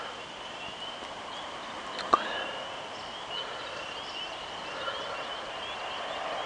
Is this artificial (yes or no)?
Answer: no